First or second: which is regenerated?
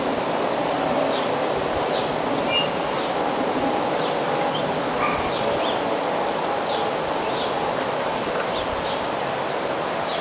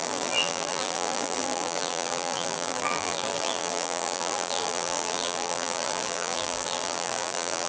second